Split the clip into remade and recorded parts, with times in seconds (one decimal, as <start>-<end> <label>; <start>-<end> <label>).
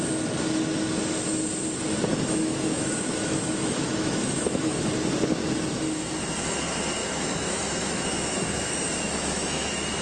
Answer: 0.0-2.1 recorded; 2.1-4.8 remade; 4.8-7.0 recorded; 7.0-10.0 remade